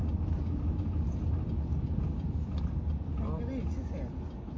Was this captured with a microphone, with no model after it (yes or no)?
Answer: yes